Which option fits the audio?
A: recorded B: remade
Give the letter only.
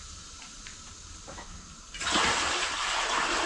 B